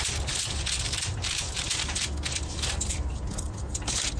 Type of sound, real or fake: fake